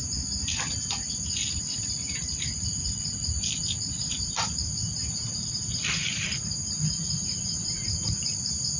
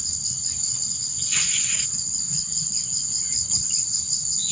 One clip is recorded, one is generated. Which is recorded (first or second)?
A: first